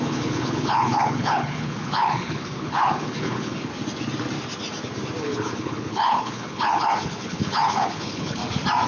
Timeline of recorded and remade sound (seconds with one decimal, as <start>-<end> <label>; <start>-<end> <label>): 0.0-3.7 remade; 3.7-5.2 recorded; 5.2-8.4 remade; 8.4-8.9 recorded

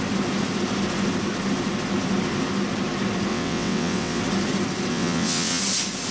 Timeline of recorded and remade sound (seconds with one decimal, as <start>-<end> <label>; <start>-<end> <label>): 0.0-3.3 recorded; 3.3-4.2 remade; 4.2-4.9 recorded; 4.9-5.6 remade; 5.6-6.1 recorded

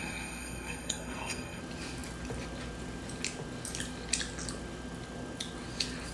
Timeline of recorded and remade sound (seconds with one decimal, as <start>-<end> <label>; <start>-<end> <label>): 0.0-1.6 remade; 1.6-6.1 recorded